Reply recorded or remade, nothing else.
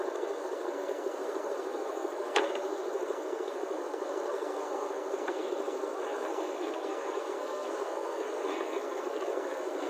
remade